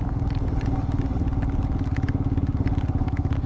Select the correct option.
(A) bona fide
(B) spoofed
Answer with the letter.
A